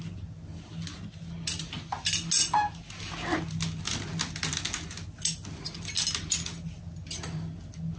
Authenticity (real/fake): real